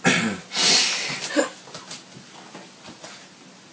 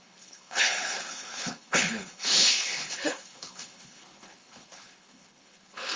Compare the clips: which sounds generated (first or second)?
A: second